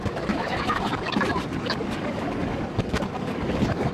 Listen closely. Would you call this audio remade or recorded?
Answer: remade